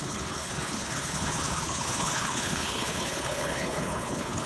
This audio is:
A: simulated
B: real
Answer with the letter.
A